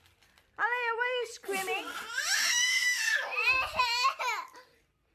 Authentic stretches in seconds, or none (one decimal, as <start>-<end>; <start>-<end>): 0.0-2.4; 3.0-5.1